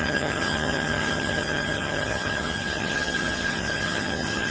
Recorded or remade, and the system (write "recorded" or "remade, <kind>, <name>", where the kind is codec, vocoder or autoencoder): remade, vocoder, HiFi-GAN